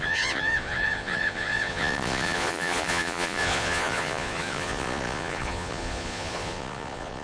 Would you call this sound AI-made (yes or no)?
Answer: yes